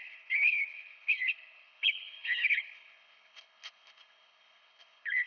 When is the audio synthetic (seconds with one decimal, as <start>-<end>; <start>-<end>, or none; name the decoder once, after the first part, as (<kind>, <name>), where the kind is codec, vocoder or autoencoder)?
0.0-5.3 (codec, HILCodec)